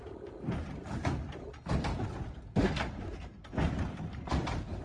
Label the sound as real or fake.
real